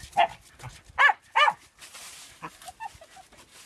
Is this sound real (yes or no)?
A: yes